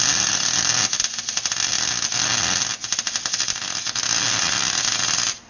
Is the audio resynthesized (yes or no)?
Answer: no